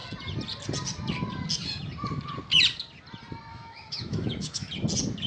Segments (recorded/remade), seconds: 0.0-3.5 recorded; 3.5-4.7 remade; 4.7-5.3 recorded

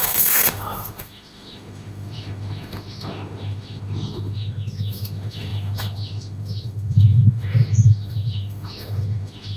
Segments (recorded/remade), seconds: 0.0-9.6 remade

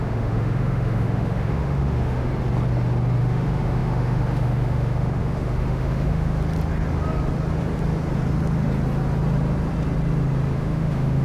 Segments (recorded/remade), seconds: 0.0-2.3 remade; 2.3-3.2 recorded; 3.2-6.4 remade; 6.4-10.5 recorded; 10.5-11.2 remade

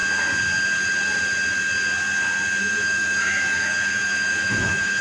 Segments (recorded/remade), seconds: 0.0-2.6 recorded; 2.6-5.0 remade

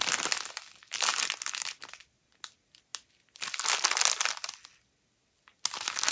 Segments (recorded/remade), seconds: 0.0-6.1 recorded